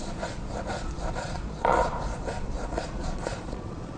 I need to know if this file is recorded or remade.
remade